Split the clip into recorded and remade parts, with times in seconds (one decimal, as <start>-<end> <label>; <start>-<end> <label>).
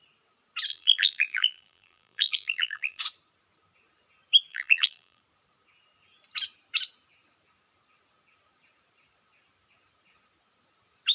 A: 0.0-0.7 recorded; 0.7-3.0 remade; 3.0-4.5 recorded; 4.5-5.2 remade; 5.2-11.1 recorded